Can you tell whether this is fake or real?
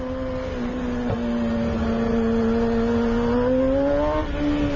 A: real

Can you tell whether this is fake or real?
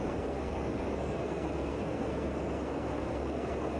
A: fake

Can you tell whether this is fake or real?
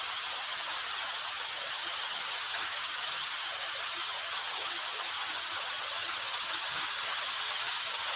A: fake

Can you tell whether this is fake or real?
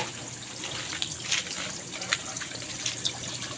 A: real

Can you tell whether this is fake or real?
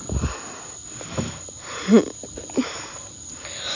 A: real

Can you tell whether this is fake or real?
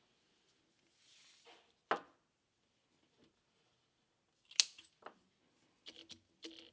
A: real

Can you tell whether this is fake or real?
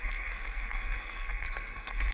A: fake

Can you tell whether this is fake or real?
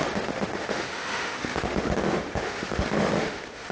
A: fake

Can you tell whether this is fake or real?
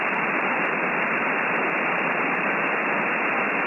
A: fake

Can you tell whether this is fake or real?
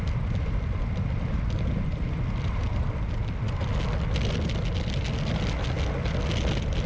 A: real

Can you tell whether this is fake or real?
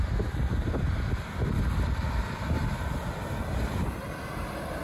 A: real